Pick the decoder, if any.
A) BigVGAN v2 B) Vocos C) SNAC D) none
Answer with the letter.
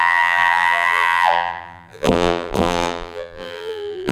A